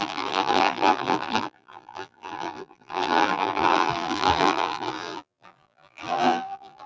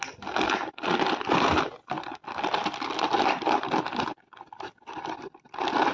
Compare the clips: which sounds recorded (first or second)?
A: second